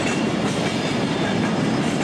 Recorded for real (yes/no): yes